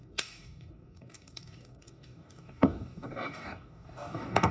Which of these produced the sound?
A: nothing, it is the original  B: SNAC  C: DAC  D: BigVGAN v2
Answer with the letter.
C